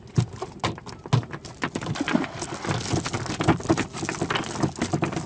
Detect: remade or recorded recorded